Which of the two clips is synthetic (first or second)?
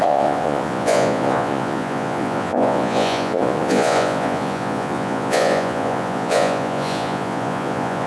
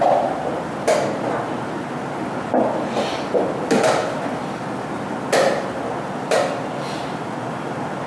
first